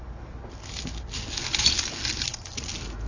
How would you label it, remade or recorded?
recorded